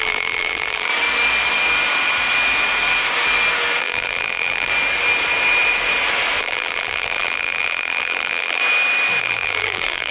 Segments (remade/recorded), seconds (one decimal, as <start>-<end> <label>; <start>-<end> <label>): 0.0-0.9 remade; 0.9-3.8 recorded; 3.8-4.7 remade; 4.7-6.4 recorded; 6.4-8.6 remade; 8.6-9.2 recorded; 9.2-10.1 remade